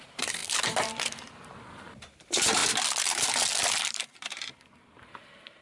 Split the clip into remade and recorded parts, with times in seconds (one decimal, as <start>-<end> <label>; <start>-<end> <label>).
0.0-0.4 remade; 0.4-2.1 recorded; 2.1-2.6 remade; 2.6-3.6 recorded; 3.6-5.6 remade